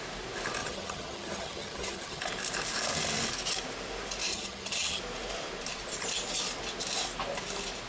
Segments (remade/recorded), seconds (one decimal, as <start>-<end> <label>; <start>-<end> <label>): 0.0-0.6 recorded; 0.6-2.2 remade; 2.2-4.3 recorded; 4.3-5.0 remade; 5.0-7.9 recorded